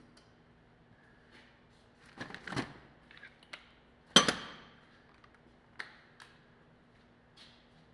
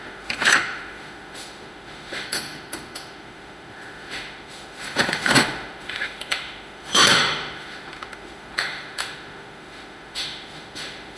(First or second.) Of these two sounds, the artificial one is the second